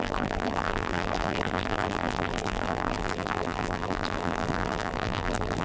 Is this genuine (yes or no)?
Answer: no